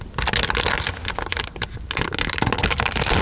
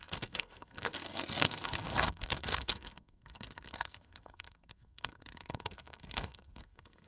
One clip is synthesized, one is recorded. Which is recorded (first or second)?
first